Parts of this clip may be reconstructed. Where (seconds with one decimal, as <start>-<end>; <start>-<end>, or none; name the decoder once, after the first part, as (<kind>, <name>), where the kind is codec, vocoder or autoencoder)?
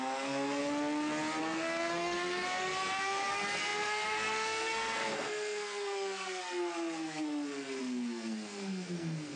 0.0-0.6 (codec, SNAC); 1.4-9.4